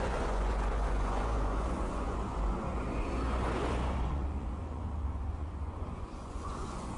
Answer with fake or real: fake